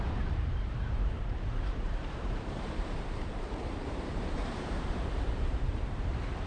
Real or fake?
fake